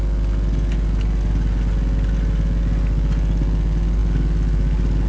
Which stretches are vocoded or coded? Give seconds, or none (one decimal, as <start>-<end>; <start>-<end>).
none